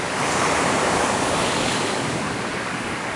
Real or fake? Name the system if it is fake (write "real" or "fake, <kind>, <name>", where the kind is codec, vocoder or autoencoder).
fake, codec, DAC